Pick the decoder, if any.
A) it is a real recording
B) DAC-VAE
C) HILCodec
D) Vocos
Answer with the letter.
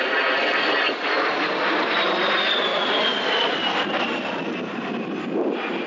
A